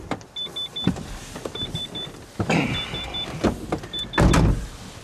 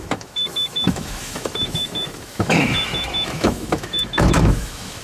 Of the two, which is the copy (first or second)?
second